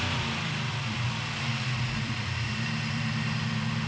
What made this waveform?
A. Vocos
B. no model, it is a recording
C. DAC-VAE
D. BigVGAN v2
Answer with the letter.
D